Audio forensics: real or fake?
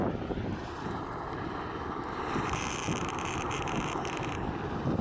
fake